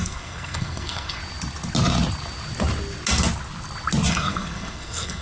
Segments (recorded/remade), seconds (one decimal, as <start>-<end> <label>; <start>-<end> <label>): 0.0-1.2 remade; 1.2-4.1 recorded; 4.1-5.2 remade